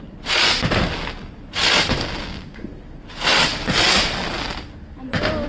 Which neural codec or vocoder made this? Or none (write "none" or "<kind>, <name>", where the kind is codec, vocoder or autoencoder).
none